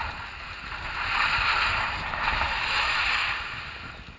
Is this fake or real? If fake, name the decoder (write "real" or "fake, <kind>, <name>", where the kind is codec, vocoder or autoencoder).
real